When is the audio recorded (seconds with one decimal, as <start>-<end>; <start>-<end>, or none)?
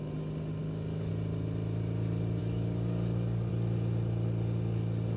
0.0-0.6; 1.1-2.4; 3.5-5.2